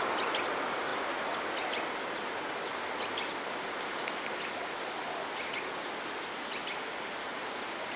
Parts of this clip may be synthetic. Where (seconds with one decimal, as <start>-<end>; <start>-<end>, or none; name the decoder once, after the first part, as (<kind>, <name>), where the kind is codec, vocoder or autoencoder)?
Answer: none